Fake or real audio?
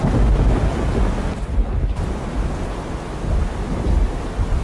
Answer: real